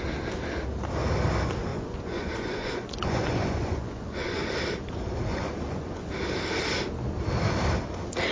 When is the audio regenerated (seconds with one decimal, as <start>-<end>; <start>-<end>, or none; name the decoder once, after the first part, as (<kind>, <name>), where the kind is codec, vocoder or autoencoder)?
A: 1.7-4.5 (vocoder, Vocos); 5.3-6.1